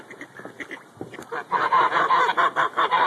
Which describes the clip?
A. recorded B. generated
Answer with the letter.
B